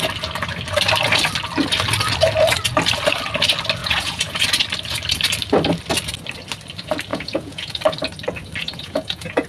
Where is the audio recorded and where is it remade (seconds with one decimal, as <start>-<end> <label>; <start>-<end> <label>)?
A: 0.0-3.8 recorded; 3.8-4.4 remade; 4.4-7.1 recorded; 7.1-7.8 remade; 7.8-8.6 recorded; 8.6-9.5 remade